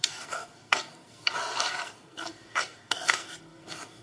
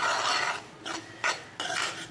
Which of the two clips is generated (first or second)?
first